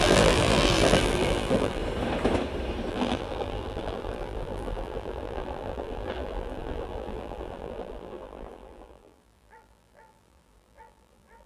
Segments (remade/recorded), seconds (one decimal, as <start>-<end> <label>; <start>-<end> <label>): 0.0-1.8 remade; 1.8-2.9 recorded; 2.9-11.5 remade